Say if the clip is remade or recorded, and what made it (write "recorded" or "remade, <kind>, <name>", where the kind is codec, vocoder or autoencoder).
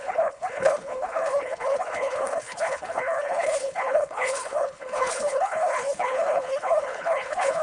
remade, codec, HILCodec